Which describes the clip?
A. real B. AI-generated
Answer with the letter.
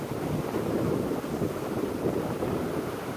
A